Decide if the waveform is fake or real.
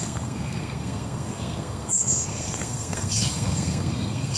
fake